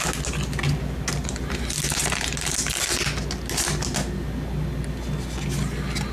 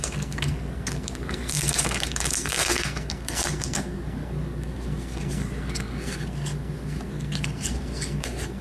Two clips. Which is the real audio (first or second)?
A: first